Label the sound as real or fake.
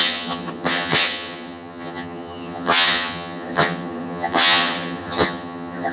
fake